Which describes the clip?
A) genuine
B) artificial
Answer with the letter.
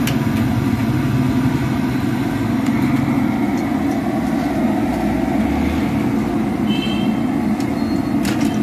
A